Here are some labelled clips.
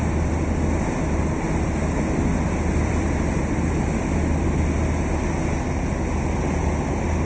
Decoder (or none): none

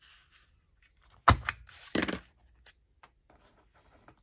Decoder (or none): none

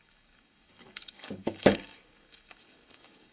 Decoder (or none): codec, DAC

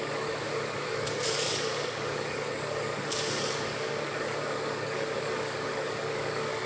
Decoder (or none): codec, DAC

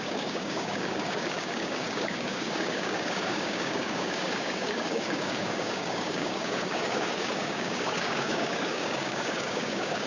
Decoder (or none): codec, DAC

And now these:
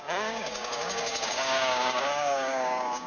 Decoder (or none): codec, DAC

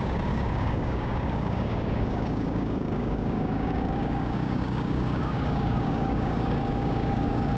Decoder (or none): codec, DAC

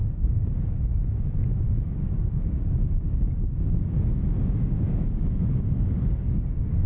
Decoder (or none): codec, DAC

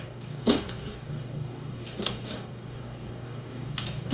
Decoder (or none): codec, DAC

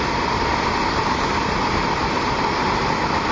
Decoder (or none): none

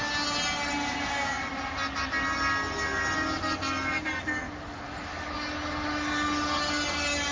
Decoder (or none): none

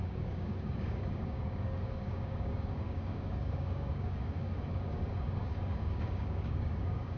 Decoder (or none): codec, DAC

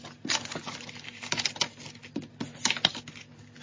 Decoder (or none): none